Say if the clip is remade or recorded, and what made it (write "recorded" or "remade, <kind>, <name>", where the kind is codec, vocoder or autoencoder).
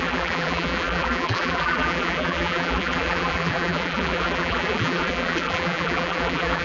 remade, vocoder, BigVGAN v2